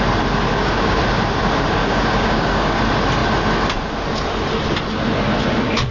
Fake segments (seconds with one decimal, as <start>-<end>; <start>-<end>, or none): 0.5-1.0; 1.8-2.8